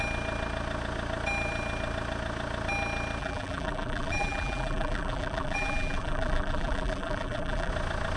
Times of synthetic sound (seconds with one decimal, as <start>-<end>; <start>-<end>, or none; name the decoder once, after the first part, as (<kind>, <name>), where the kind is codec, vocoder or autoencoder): 3.2-7.7 (vocoder, BigVGAN v2)